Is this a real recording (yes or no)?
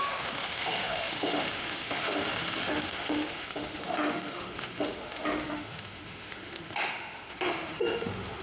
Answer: no